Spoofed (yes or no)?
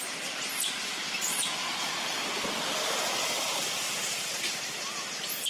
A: no